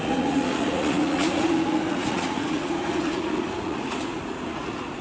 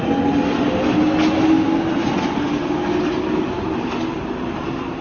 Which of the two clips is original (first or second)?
second